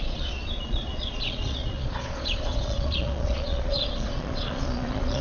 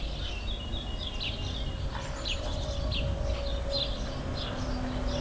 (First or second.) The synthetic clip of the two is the first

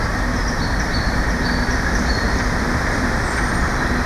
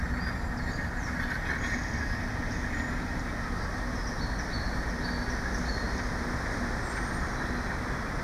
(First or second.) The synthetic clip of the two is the first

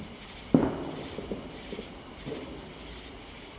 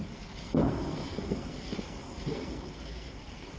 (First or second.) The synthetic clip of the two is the second